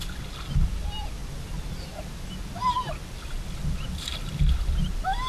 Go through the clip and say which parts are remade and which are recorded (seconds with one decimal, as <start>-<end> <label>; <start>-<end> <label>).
0.0-5.3 recorded